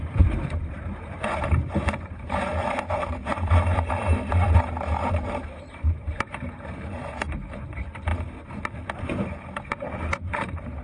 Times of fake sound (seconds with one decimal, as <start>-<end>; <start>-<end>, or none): 0.0-8.1; 9.0-10.8